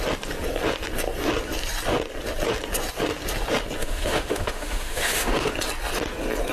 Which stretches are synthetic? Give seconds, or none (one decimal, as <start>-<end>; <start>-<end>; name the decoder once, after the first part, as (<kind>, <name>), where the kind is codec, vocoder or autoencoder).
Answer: 3.8-5.5 (autoencoder, DAC-VAE)